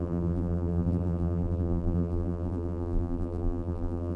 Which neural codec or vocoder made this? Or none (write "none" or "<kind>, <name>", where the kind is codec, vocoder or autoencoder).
vocoder, BigVGAN v2